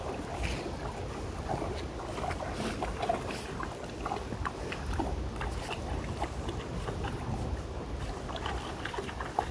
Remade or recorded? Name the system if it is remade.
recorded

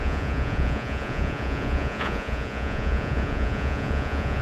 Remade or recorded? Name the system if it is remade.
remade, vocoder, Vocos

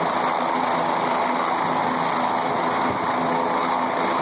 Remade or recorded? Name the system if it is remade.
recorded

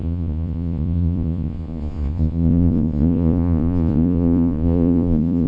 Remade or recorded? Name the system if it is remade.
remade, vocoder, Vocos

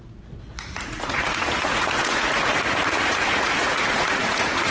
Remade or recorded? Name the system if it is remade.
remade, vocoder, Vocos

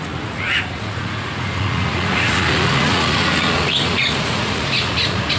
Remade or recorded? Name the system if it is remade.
remade, vocoder, Vocos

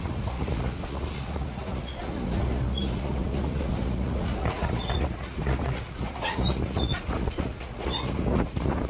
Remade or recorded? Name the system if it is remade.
remade, vocoder, Vocos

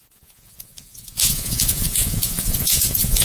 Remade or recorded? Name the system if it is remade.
remade, vocoder, Vocos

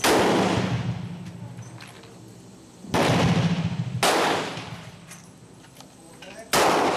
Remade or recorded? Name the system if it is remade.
recorded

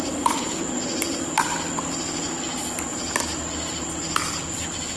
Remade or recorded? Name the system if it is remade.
recorded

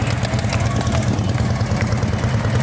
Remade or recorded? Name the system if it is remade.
recorded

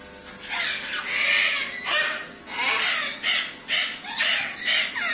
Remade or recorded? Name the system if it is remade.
recorded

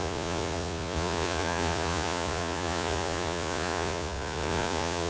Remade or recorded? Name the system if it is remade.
remade, vocoder, Vocos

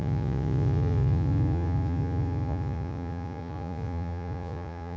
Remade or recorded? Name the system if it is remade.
remade, vocoder, Vocos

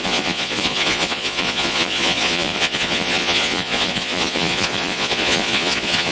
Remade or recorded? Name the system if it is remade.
remade, vocoder, Vocos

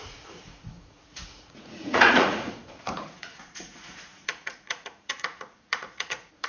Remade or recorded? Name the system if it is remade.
remade, vocoder, Vocos